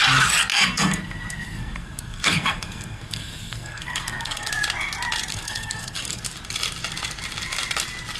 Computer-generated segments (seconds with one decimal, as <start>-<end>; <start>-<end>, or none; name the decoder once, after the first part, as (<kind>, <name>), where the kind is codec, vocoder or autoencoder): 0.5-4.5 (codec, SNAC); 5.3-6.2